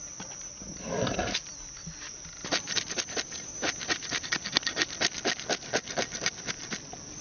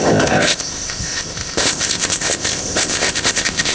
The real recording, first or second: first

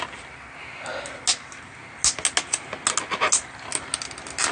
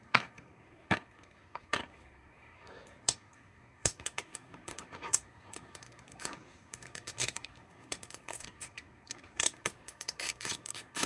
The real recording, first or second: first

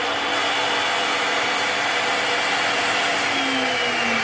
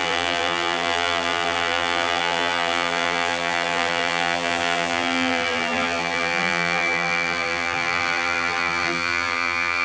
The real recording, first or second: first